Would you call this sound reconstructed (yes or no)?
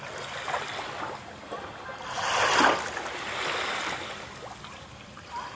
no